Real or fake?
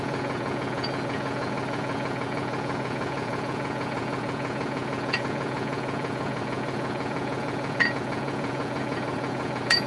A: fake